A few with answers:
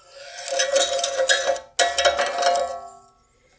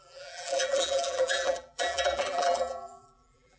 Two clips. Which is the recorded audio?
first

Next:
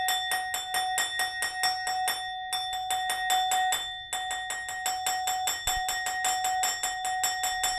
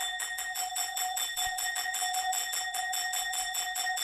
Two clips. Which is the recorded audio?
first